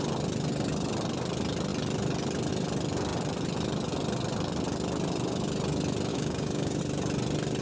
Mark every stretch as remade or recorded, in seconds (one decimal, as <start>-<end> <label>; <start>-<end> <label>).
0.0-6.1 recorded; 6.1-6.8 remade; 6.8-7.6 recorded